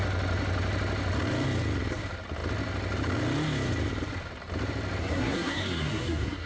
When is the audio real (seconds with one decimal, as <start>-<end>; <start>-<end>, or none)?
0.0-5.0